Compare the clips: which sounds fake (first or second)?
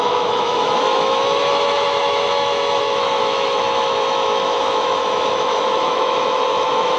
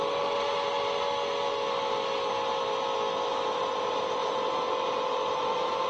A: first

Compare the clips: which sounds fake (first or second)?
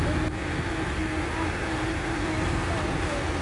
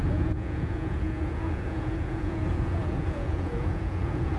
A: second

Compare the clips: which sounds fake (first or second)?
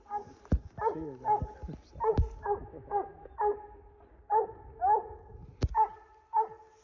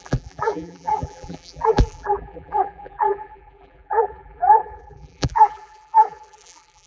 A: second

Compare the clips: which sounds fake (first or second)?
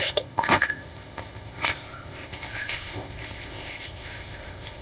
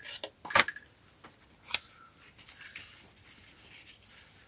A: first